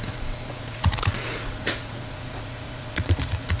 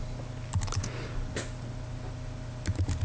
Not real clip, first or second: first